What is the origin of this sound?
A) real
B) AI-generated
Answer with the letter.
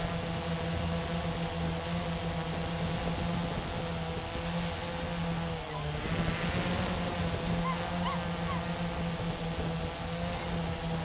A